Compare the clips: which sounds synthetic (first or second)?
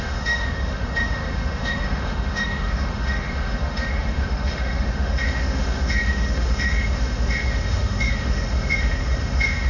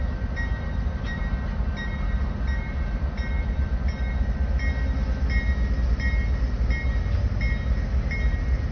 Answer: first